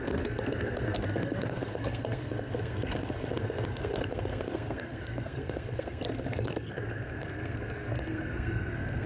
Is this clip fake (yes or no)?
yes